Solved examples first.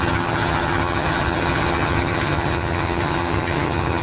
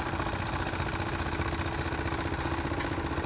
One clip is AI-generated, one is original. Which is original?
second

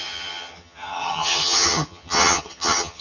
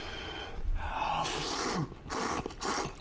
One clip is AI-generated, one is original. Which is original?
second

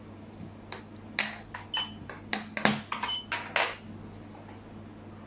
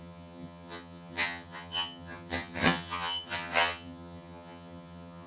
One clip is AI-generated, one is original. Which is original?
first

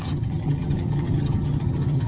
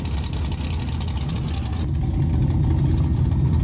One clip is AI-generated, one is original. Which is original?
second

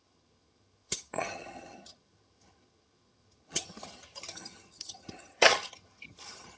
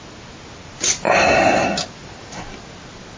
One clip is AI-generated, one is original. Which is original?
second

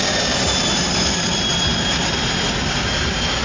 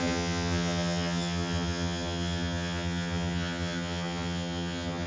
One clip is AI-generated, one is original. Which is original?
first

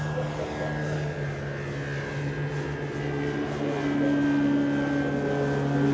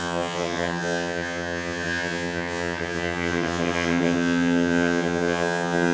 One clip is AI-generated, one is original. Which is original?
first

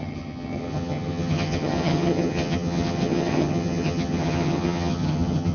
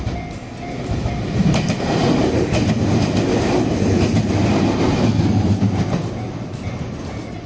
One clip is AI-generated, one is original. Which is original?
second